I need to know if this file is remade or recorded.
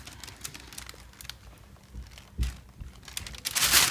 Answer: recorded